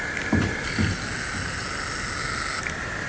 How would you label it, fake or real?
real